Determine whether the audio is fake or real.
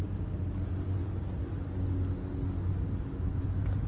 real